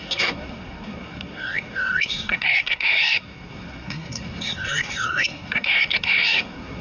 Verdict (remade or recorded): remade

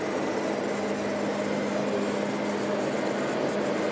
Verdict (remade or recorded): recorded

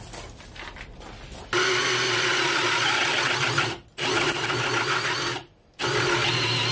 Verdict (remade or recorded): recorded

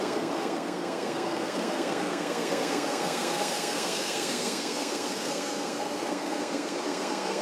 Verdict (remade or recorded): remade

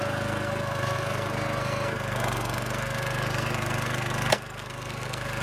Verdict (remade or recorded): remade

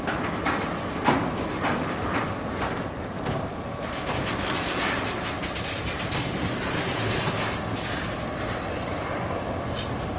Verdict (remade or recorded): recorded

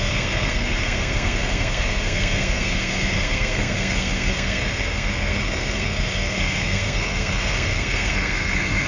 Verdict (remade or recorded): remade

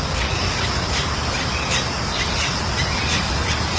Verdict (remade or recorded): recorded